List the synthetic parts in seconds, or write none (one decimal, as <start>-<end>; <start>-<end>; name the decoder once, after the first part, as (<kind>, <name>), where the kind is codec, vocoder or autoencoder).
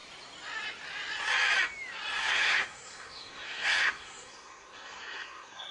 2.2-5.7 (codec, SNAC)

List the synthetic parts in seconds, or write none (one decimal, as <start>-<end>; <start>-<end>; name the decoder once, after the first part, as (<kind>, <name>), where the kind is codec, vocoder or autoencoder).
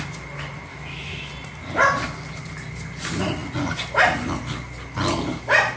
0.7-1.3 (autoencoder, DAC-VAE)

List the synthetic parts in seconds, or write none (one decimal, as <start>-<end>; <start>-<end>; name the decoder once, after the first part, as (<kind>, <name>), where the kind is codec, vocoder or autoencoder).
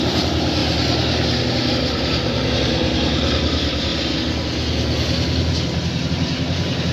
0.0-0.6 (vocoder, BigVGAN v2); 1.7-3.9; 6.1-6.9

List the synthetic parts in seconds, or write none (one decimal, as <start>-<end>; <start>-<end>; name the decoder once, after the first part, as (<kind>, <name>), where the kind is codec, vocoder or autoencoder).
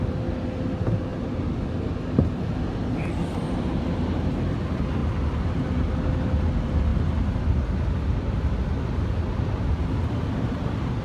5.0-5.7 (vocoder, BigVGAN v2)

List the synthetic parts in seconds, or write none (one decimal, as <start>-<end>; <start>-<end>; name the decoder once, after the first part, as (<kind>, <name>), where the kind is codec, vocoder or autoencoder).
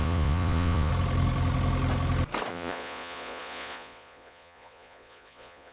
0.0-0.9 (vocoder, Vocos); 2.5-5.7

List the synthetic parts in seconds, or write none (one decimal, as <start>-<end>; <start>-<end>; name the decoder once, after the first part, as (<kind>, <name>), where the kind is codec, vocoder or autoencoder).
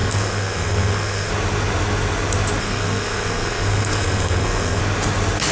0.0-1.3 (codec, SNAC); 2.6-4.8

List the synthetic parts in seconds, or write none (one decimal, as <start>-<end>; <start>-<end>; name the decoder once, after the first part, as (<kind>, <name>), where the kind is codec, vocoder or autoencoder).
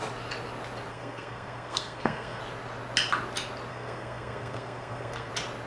0.9-2.4 (codec, SNAC); 3.7-5.3